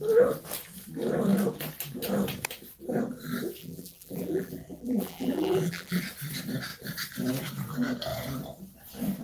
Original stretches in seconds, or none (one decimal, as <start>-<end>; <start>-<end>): 0.0-3.6; 6.0-9.2